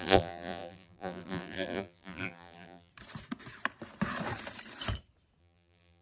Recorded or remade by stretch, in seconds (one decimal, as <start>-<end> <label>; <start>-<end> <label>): 0.0-2.9 remade; 2.9-5.4 recorded; 5.4-6.0 remade